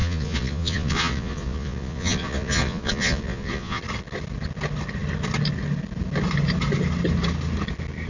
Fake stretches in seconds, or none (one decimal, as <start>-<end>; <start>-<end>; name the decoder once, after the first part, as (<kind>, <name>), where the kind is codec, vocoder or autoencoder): 0.0-3.8 (vocoder, Vocos)